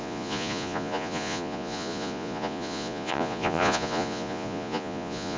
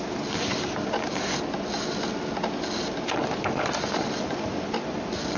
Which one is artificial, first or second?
first